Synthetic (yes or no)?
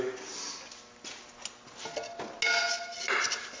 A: no